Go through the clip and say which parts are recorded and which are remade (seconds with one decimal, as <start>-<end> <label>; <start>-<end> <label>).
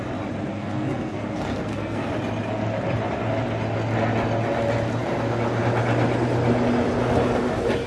0.0-0.5 recorded; 0.5-2.1 remade; 2.1-7.9 recorded